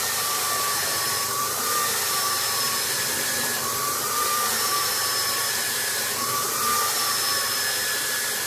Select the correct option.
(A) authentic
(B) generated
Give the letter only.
B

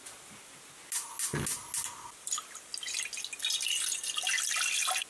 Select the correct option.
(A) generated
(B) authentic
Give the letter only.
B